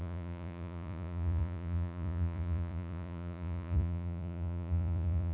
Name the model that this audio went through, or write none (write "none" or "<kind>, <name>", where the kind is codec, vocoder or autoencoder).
vocoder, Vocos